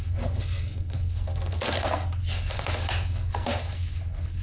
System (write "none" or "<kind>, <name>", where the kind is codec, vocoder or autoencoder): codec, SNAC